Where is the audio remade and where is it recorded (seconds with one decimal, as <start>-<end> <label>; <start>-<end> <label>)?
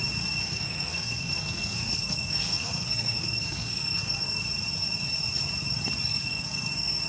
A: 0.0-0.4 recorded; 0.4-4.4 remade; 4.4-6.1 recorded; 6.1-7.1 remade